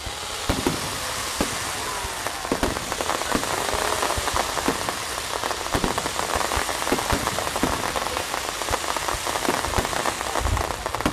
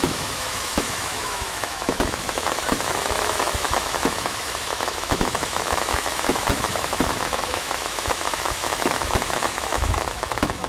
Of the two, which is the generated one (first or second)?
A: second